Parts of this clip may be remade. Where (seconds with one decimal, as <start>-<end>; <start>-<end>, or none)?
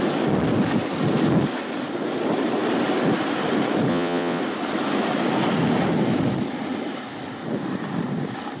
3.9-4.4